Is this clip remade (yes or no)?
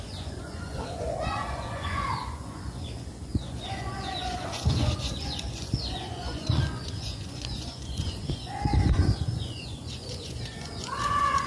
yes